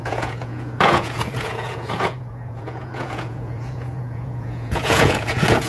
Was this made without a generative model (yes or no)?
no